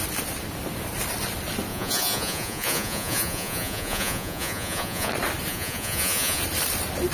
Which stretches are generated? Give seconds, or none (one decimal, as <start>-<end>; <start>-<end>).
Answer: 1.7-5.1; 5.5-6.4